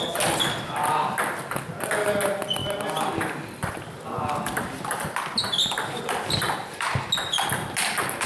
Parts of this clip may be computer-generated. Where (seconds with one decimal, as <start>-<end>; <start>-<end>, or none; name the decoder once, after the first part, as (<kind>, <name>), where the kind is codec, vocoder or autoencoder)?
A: none